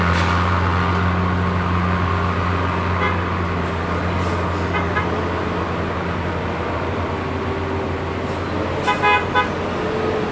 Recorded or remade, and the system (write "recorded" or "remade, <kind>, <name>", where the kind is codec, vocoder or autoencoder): recorded